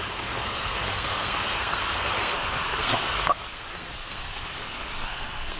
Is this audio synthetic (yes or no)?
yes